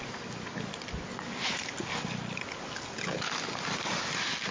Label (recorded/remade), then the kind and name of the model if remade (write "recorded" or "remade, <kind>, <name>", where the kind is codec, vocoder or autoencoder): recorded